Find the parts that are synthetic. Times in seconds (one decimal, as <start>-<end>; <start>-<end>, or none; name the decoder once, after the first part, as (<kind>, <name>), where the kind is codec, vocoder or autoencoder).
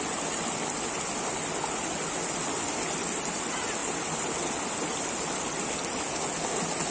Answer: none